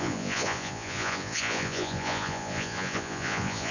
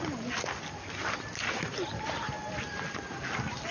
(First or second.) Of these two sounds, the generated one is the first